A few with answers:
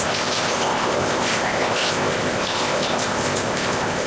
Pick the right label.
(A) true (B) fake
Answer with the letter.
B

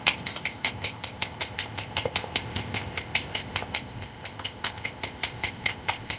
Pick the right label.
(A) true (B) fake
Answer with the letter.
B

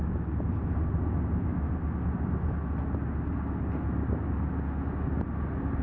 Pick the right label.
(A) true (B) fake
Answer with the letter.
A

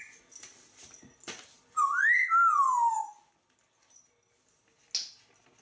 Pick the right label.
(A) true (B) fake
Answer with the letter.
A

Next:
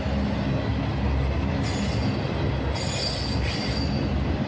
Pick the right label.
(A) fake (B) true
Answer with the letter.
B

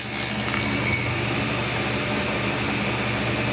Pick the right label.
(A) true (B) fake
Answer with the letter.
A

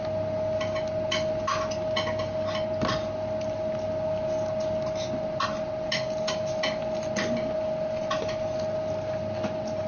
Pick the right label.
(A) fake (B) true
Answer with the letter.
B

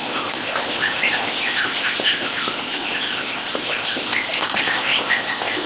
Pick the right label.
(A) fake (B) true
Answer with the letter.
A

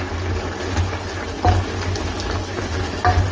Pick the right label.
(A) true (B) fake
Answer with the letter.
A